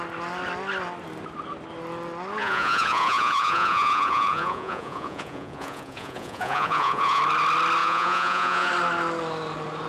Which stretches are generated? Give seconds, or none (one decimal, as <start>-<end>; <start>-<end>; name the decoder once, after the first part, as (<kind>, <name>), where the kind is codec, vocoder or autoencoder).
2.4-7.2 (vocoder, Vocos); 7.8-8.7